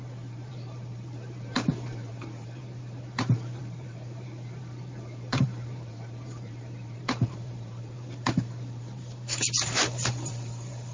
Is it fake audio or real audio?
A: fake